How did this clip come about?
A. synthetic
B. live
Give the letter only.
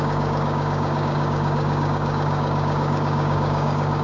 A